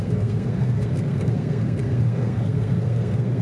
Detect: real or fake fake